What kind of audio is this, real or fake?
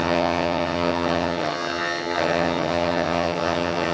fake